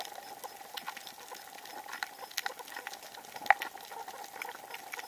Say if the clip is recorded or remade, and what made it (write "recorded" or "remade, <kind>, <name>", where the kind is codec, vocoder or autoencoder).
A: recorded